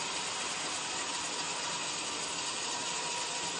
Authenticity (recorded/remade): recorded